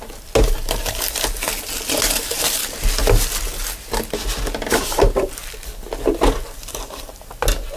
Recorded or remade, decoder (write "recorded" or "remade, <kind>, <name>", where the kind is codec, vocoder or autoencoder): recorded